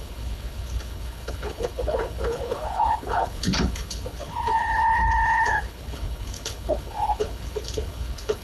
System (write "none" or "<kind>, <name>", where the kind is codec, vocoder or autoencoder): codec, HILCodec